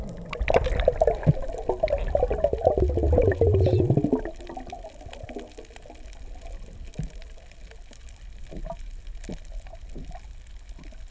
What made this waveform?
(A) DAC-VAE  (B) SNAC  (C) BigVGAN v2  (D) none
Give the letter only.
D